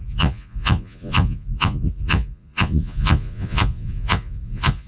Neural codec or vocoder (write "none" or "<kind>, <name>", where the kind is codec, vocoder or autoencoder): vocoder, Vocos